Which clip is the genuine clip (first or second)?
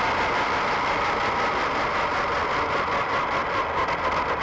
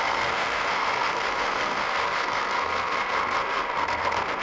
first